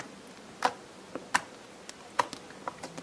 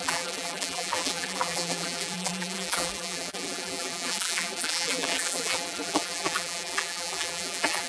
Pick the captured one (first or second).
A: first